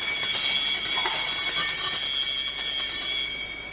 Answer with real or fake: real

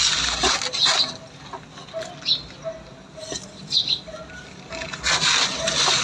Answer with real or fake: real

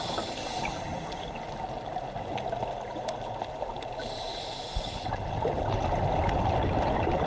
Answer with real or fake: real